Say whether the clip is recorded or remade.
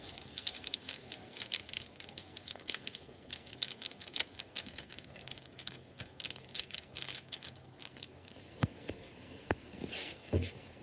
remade